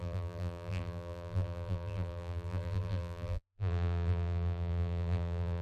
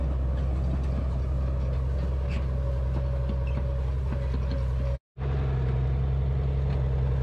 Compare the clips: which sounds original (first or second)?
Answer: second